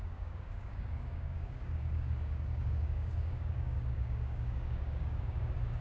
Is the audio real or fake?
fake